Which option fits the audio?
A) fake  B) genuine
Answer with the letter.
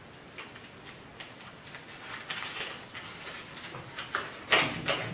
B